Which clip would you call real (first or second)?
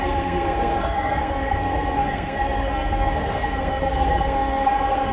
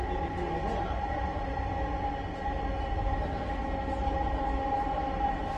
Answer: second